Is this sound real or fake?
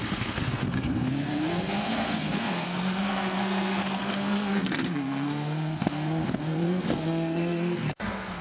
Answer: fake